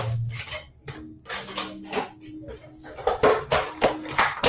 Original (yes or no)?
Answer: yes